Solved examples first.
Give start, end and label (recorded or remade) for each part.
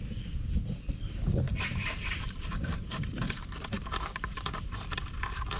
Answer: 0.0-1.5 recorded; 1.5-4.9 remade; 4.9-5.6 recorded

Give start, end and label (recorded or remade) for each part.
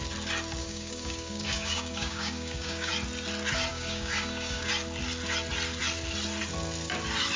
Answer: 0.0-0.6 recorded; 0.6-2.9 remade; 2.9-3.7 recorded; 3.7-4.7 remade; 4.7-7.4 recorded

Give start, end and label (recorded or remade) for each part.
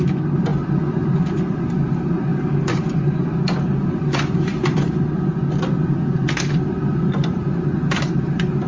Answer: 0.0-8.7 recorded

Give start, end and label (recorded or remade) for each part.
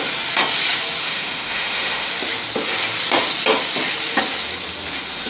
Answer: 0.0-1.0 recorded; 1.0-2.1 remade; 2.1-5.3 recorded